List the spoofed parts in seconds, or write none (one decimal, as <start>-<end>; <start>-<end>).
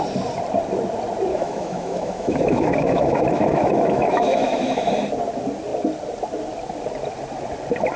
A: 1.3-4.9